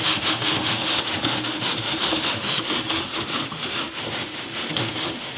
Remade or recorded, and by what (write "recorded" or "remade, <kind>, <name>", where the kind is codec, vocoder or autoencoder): remade, autoencoder, DAC-VAE